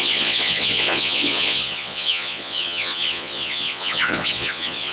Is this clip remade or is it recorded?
remade